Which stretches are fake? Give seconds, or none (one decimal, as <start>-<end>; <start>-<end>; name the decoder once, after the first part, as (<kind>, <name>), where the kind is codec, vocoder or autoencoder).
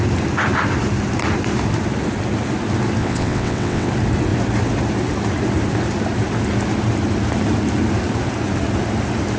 3.0-3.9 (vocoder, WaveNeXt)